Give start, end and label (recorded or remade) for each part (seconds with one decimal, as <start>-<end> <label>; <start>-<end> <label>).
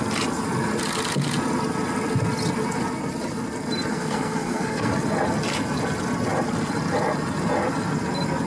0.0-3.9 recorded; 3.9-4.9 remade; 4.9-8.5 recorded